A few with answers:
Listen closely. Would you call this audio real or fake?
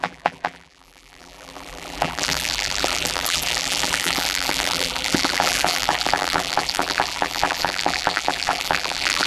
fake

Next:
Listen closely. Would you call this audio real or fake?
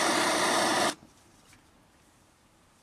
fake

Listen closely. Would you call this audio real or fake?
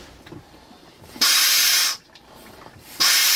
fake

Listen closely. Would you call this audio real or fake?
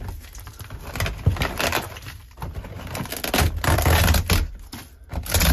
real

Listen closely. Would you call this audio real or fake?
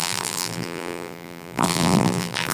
fake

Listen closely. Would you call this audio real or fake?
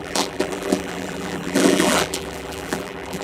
fake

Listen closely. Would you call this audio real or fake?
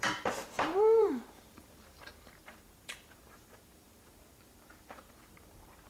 fake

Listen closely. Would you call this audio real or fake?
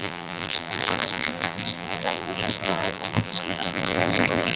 fake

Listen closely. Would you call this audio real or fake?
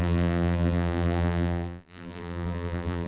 fake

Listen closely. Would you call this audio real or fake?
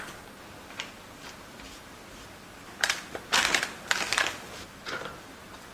fake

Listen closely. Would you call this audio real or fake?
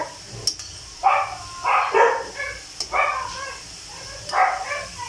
real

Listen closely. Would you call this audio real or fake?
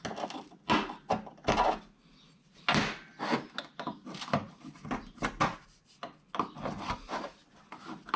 real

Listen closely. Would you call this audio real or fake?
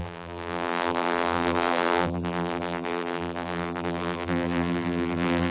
fake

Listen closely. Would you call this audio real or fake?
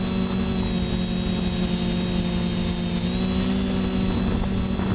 real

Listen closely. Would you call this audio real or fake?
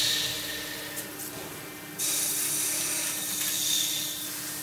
real